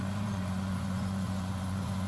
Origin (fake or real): fake